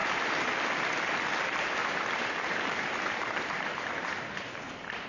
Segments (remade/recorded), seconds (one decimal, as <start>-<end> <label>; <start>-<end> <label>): 0.0-0.6 remade; 0.6-1.8 recorded; 1.8-5.1 remade